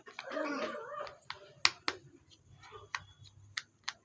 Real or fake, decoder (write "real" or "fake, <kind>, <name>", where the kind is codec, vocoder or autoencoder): real